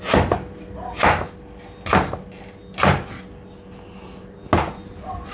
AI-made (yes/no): no